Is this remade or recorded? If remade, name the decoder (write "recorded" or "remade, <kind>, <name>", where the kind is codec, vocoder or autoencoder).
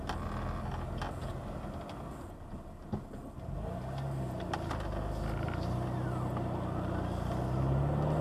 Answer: recorded